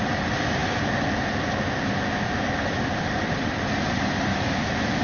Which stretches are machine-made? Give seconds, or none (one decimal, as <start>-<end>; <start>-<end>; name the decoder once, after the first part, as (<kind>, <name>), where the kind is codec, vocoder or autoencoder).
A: 4.3-5.0 (autoencoder, DAC-VAE)